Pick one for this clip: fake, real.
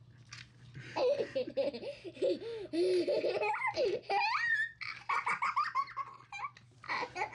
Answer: real